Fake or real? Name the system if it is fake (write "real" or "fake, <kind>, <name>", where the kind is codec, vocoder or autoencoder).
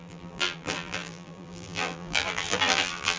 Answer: fake, vocoder, BigVGAN v2